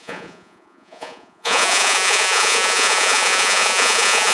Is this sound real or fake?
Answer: fake